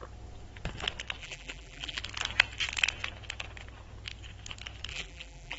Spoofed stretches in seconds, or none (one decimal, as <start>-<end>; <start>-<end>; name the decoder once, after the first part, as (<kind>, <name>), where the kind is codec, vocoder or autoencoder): 1.2-2.0 (vocoder, BigVGAN v2); 4.9-5.6